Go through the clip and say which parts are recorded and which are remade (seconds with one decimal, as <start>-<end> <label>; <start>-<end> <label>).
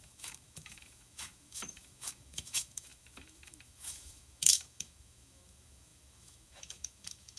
0.0-7.4 remade